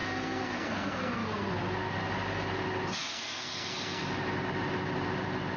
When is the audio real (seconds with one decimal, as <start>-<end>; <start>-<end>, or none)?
1.5-3.0; 4.0-5.6